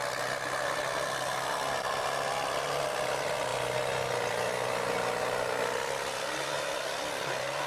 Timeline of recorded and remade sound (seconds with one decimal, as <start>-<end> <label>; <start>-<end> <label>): 0.0-7.7 recorded